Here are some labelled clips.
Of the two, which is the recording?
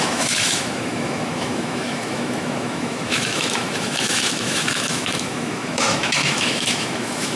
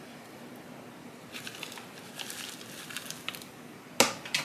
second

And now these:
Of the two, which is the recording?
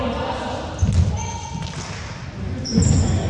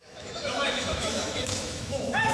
first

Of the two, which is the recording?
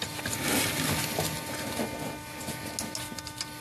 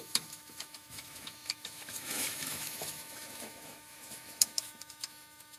first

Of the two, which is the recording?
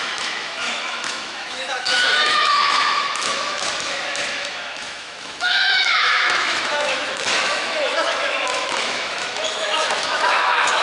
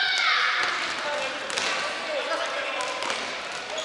second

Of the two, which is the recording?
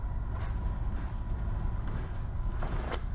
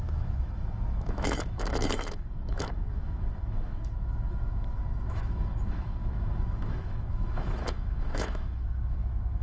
first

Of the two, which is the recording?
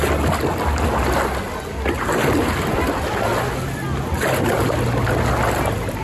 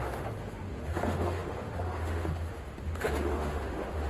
first